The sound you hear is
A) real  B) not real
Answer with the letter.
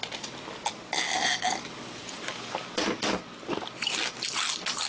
A